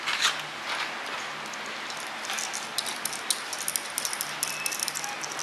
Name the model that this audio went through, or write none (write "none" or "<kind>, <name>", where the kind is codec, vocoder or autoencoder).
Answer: none